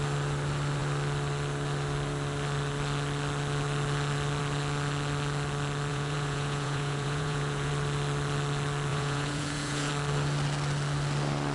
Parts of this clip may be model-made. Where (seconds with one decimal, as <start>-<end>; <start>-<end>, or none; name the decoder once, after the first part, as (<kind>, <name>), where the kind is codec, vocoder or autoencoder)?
5.9-7.7 (vocoder, Vocos); 8.9-9.9